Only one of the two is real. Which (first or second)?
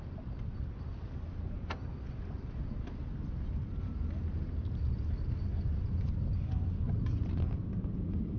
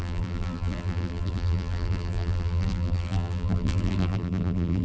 first